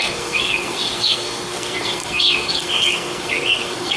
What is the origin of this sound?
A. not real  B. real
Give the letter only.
A